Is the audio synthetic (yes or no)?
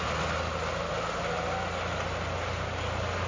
no